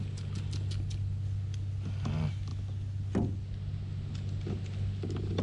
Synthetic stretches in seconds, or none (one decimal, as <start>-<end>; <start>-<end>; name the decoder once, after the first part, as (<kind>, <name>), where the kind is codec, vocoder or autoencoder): none